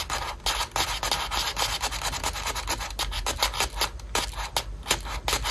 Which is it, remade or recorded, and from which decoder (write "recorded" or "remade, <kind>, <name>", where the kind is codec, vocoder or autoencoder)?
recorded